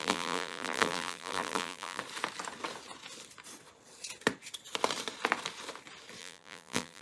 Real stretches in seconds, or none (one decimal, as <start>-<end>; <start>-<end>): 2.0-6.2